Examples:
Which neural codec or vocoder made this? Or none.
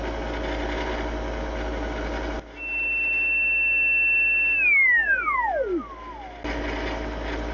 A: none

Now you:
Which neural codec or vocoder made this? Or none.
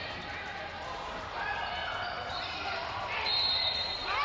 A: none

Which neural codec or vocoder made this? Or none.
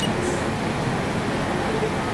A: none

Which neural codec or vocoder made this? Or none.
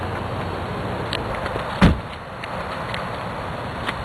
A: none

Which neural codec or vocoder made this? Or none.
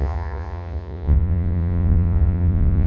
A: vocoder, Vocos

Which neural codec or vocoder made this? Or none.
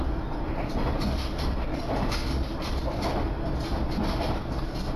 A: none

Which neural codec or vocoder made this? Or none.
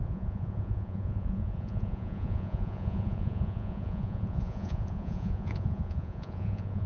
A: vocoder, Vocos